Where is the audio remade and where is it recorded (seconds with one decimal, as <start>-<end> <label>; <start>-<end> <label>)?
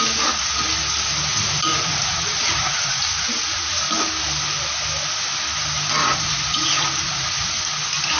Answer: 0.0-1.7 recorded; 1.7-3.8 remade; 3.8-6.0 recorded; 6.0-7.6 remade; 7.6-8.2 recorded